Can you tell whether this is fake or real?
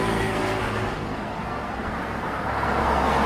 fake